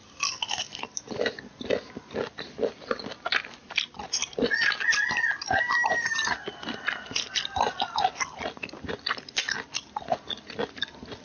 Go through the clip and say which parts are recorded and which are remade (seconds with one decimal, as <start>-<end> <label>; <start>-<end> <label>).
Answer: 0.0-1.0 remade; 1.0-4.2 recorded; 4.2-7.7 remade; 7.7-11.2 recorded

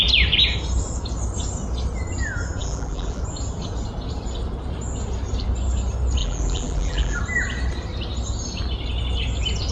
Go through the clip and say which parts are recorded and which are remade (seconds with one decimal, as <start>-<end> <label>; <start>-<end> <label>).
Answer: 0.0-2.6 recorded; 2.6-3.2 remade; 3.2-6.2 recorded; 6.2-7.2 remade; 7.2-9.7 recorded

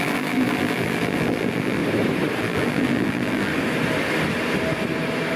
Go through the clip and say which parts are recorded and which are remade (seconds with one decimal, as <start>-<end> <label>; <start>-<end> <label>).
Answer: 0.0-1.8 remade; 1.8-2.4 recorded; 2.4-3.5 remade; 3.5-5.4 recorded

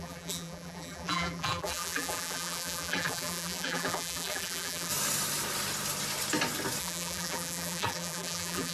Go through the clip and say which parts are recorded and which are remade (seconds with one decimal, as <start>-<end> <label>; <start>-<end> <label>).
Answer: 0.0-4.9 remade; 4.9-6.8 recorded; 6.8-8.7 remade

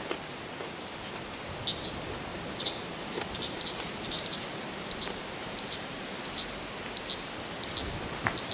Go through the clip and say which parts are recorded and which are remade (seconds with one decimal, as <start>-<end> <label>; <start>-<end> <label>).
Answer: 0.0-2.3 recorded; 2.3-6.6 remade; 6.6-8.5 recorded

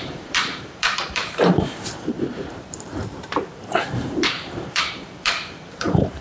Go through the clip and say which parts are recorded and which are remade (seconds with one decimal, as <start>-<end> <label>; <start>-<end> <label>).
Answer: 0.0-6.2 remade

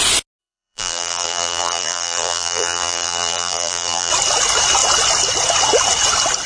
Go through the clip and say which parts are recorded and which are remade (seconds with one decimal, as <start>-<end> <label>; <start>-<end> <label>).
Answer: 0.0-0.4 recorded; 0.4-4.1 remade; 4.1-6.5 recorded